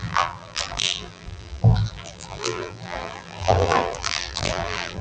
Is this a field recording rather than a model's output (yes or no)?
no